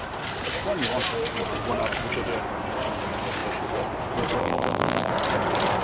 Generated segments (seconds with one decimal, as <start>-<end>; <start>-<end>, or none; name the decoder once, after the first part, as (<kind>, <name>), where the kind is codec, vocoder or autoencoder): 4.4-5.1 (vocoder, BigVGAN v2)